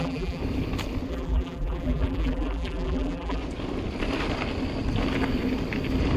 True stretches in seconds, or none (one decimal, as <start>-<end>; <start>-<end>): 0.4-1.1; 3.4-6.2